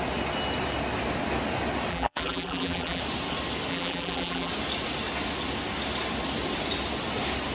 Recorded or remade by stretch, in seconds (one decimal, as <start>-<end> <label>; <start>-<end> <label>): 0.0-1.9 recorded; 1.9-3.0 remade; 3.0-3.7 recorded; 3.7-4.5 remade; 4.5-7.5 recorded